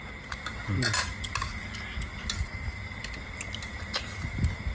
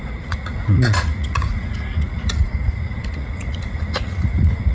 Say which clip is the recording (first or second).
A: first